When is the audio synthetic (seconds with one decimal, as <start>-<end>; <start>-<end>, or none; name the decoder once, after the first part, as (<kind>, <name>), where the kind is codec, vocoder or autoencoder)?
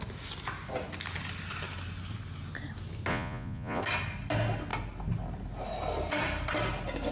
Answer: 3.1-3.8 (vocoder, Vocos)